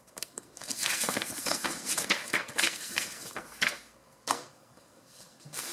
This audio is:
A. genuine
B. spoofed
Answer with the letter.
B